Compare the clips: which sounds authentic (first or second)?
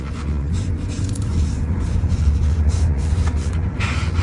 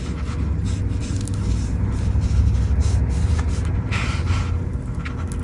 second